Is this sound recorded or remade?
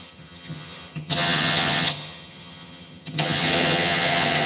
remade